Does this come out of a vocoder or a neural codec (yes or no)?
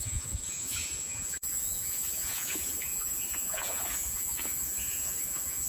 yes